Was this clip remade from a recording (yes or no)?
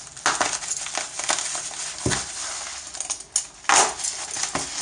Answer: no